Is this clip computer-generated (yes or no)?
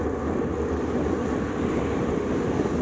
no